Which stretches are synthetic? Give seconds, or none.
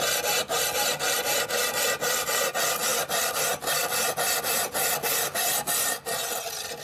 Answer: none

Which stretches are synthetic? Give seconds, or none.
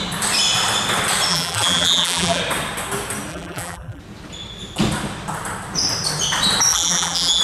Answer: 1.3-2.4 (vocoder, BigVGAN v2); 3.3-4.0; 6.7-7.4